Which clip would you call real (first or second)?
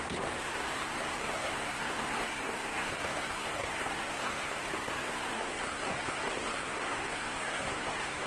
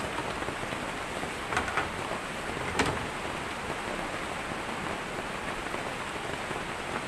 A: second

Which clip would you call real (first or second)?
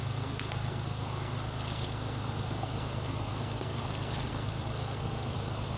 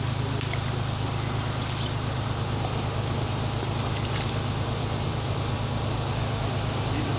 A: second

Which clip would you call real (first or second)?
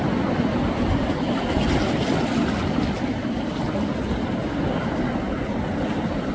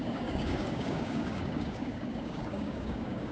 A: first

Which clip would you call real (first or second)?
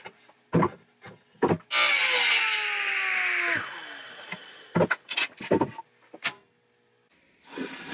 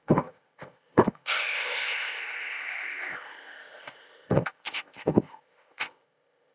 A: first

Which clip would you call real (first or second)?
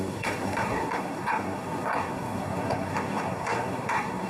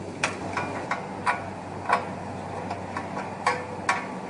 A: second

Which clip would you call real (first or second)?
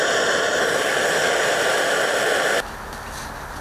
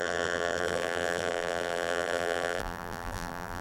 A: first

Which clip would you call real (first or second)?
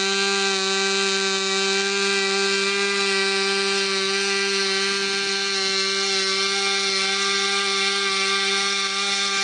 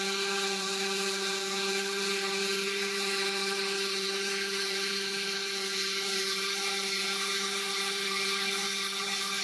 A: first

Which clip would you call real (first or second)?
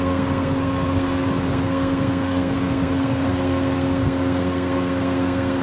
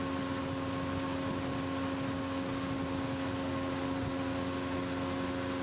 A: second